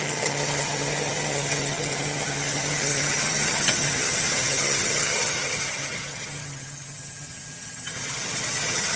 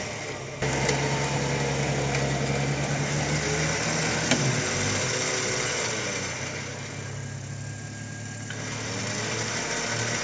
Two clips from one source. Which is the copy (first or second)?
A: first